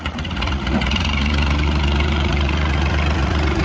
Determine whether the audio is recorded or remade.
remade